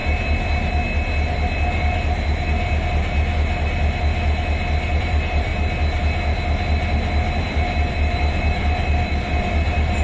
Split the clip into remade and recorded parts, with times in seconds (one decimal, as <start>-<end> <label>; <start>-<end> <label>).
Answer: 0.0-5.0 recorded; 5.0-5.5 remade; 5.5-7.4 recorded; 7.4-10.0 remade

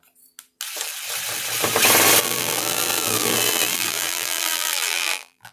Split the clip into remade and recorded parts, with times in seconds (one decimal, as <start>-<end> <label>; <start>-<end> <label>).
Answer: 0.0-2.2 recorded; 2.2-5.5 remade

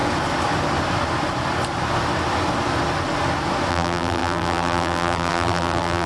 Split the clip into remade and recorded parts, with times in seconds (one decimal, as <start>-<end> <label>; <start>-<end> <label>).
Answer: 0.0-3.7 recorded; 3.7-6.1 remade